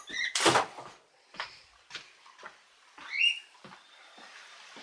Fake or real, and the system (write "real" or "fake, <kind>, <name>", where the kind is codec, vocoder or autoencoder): real